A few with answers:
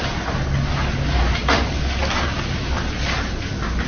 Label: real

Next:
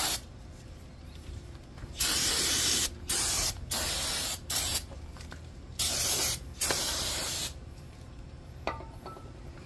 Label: fake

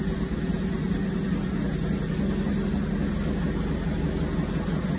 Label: real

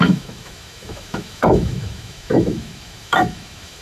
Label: fake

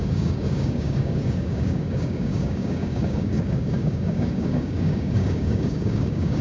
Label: fake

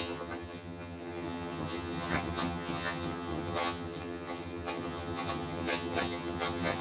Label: fake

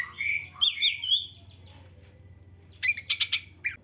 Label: real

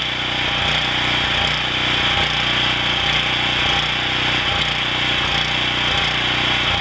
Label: real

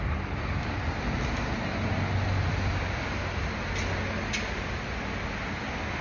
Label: real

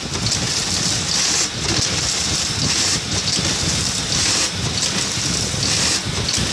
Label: real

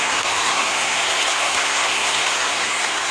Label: fake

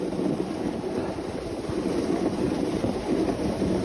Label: real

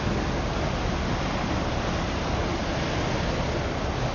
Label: real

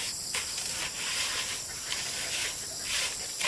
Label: real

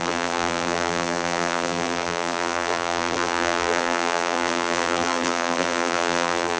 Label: fake